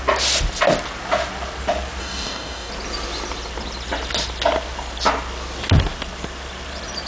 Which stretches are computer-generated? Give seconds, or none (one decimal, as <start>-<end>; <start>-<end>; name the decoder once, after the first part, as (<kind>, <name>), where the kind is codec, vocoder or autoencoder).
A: 2.0-2.7 (codec, DAC)